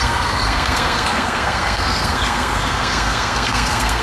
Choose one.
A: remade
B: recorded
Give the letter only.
A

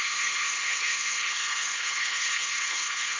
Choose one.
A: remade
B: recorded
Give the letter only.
A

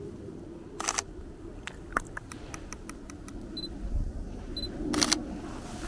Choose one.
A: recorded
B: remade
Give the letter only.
A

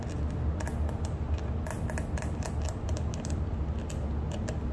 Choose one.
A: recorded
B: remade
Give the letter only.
A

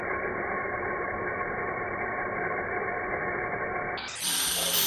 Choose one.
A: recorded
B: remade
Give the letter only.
B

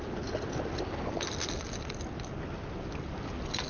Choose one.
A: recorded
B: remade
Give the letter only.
A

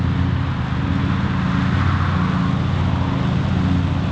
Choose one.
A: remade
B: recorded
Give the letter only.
B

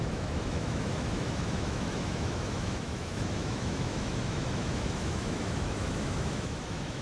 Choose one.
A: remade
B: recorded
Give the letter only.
A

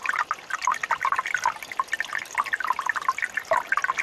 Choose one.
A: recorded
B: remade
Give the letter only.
A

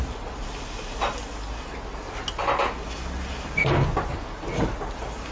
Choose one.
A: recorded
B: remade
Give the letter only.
A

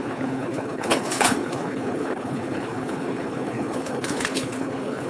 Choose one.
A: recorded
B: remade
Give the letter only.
B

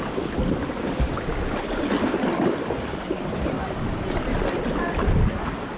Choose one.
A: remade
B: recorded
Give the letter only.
B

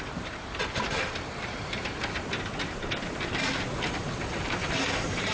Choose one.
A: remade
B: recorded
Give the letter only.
A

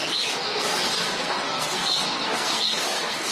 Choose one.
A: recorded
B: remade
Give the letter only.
B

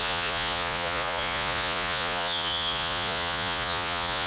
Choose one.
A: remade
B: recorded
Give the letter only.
A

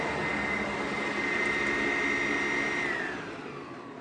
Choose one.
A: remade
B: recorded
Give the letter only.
B